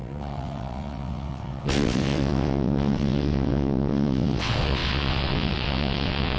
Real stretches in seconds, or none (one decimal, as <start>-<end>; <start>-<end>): none